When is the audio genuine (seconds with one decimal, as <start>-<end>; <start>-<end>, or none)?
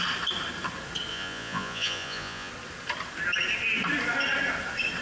0.0-1.1; 2.5-5.0